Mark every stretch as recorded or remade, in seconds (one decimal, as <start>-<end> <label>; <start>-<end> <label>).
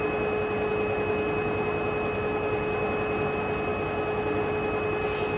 0.0-5.4 recorded